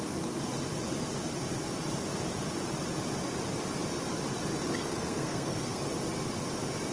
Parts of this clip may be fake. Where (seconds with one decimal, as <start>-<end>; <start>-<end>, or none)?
4.9-5.8